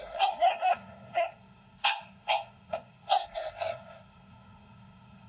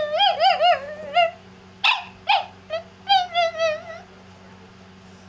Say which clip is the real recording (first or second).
second